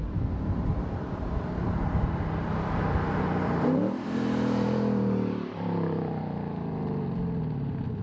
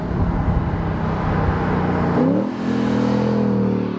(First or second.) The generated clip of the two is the first